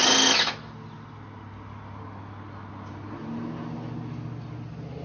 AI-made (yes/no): no